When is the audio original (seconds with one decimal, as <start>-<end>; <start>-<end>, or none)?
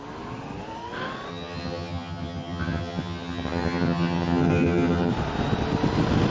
0.0-1.3; 5.1-6.3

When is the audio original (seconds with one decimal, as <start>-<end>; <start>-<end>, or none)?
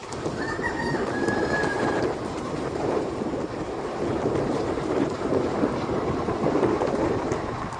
3.6-7.8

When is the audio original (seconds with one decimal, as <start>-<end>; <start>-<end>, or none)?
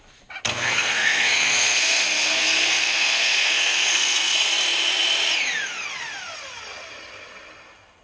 0.0-0.5; 4.5-8.0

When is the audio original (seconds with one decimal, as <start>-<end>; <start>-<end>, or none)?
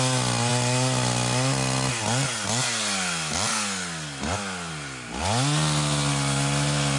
0.0-7.0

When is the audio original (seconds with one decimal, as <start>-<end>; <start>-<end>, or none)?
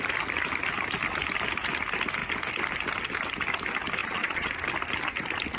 0.0-4.0; 4.5-5.6